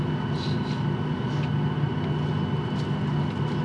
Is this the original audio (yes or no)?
yes